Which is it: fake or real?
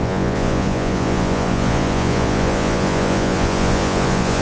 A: fake